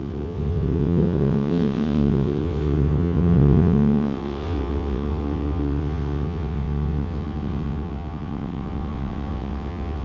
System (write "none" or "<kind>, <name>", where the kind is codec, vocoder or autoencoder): vocoder, WaveNeXt